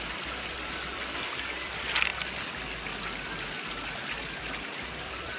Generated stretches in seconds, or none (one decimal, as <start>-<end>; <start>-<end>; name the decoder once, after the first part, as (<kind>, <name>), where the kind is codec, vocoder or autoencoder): none